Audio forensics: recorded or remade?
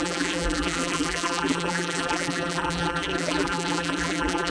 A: remade